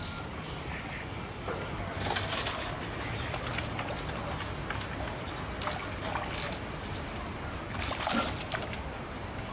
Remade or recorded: recorded